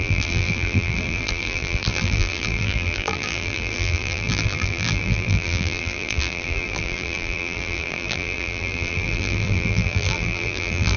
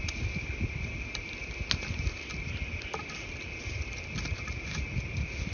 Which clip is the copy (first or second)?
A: first